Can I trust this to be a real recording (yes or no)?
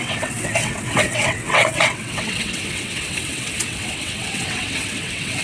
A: no